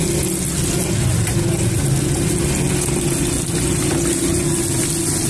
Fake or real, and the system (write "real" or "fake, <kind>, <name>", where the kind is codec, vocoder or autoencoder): real